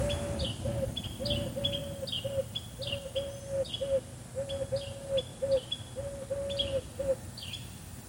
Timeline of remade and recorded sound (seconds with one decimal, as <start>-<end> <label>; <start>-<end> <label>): 0.0-8.1 recorded